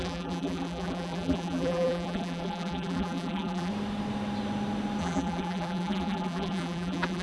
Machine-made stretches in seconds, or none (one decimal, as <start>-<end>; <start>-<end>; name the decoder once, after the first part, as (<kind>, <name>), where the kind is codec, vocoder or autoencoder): 0.0-3.7 (vocoder, BigVGAN v2); 5.0-7.2